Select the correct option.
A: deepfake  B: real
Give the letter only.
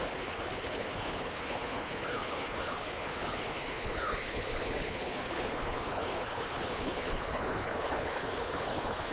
A